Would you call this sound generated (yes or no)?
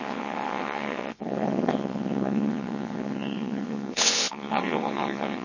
yes